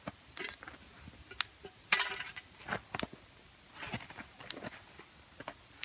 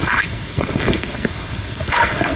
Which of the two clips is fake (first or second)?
second